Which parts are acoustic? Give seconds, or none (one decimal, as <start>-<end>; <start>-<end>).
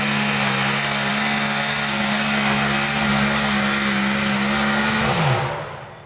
0.0-6.1